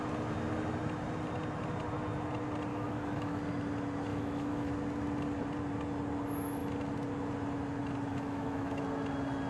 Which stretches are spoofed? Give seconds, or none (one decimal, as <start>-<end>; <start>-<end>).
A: 2.7-3.4; 4.1-4.7; 8.1-8.8